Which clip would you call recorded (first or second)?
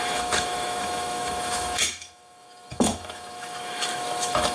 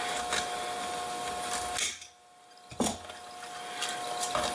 second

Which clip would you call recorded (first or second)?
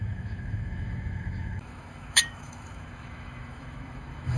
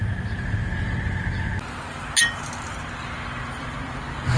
second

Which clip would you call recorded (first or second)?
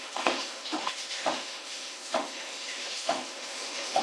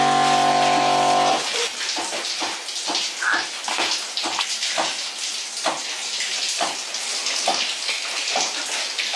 second